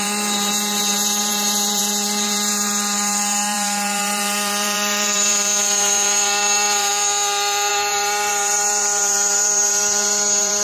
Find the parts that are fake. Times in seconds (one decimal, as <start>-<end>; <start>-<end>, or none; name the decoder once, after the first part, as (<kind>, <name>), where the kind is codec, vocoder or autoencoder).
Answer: 0.0-6.9 (vocoder, BigVGAN v2); 7.7-10.6